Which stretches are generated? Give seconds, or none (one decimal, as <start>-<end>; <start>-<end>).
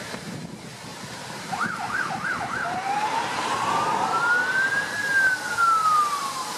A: 0.9-4.2